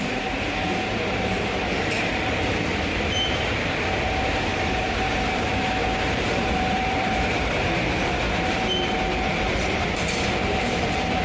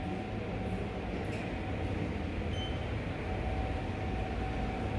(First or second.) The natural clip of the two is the second